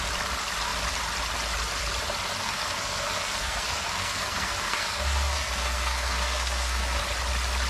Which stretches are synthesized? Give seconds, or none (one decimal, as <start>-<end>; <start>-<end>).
2.4-7.0